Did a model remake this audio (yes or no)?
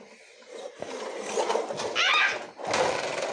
no